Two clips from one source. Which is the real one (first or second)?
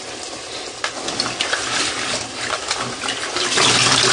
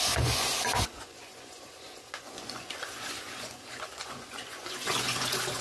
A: first